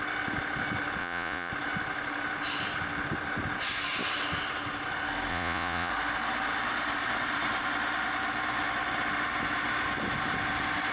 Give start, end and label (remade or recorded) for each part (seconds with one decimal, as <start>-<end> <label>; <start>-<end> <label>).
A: 0.0-1.0 recorded; 1.0-1.5 remade; 1.5-5.3 recorded; 5.3-5.9 remade; 5.9-10.9 recorded